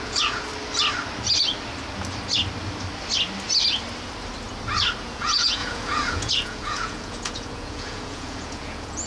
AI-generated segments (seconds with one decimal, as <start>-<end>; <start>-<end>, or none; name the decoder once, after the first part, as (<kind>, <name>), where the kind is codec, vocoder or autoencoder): 0.0-0.5 (vocoder, Vocos); 5.0-9.1